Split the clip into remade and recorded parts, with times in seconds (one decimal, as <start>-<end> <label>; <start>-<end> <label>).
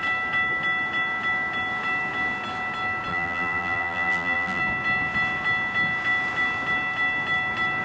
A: 0.0-3.1 recorded; 3.1-4.6 remade; 4.6-7.8 recorded